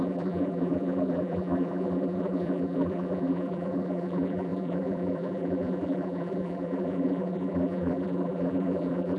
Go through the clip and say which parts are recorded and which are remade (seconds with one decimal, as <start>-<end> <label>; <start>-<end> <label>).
0.0-9.2 remade